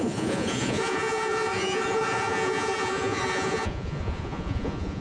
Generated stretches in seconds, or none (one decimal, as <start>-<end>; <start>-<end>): 0.0-5.0